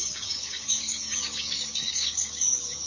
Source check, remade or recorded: remade